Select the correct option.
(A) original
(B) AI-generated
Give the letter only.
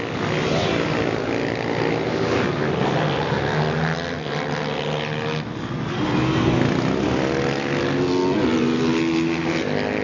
A